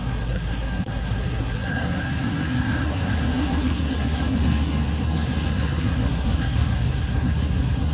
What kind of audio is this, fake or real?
fake